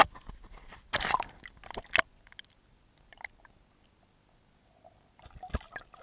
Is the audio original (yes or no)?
yes